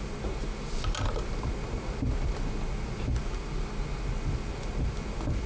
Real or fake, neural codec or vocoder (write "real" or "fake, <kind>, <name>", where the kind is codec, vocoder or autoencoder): real